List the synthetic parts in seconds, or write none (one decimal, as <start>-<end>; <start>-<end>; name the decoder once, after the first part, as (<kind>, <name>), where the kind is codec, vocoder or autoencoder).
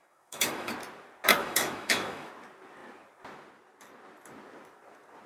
0.0-0.7 (autoencoder, DAC-VAE); 1.4-2.3